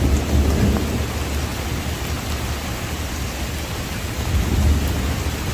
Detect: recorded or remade recorded